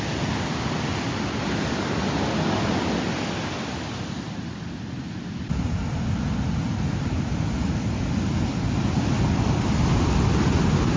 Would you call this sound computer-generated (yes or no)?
no